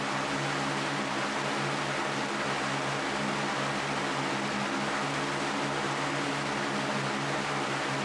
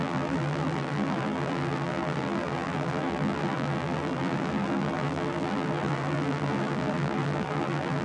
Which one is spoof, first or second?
second